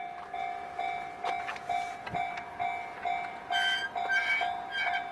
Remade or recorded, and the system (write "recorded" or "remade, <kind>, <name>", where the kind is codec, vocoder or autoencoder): recorded